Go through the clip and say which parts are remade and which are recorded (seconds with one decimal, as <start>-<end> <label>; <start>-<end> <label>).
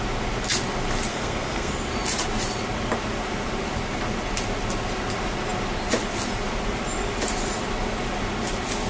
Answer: 0.0-1.1 recorded; 1.1-1.7 remade; 1.7-8.9 recorded